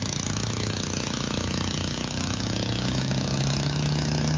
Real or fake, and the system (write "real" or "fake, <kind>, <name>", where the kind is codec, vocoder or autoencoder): fake, autoencoder, DAC-VAE